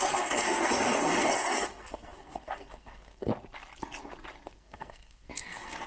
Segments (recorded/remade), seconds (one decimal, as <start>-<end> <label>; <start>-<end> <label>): 0.0-3.3 remade; 3.3-4.5 recorded; 4.5-5.9 remade